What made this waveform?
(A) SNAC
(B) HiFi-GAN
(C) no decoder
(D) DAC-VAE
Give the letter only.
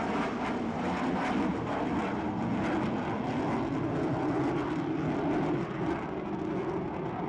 C